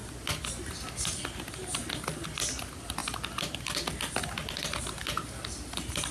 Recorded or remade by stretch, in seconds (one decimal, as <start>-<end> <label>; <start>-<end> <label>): 0.0-6.1 recorded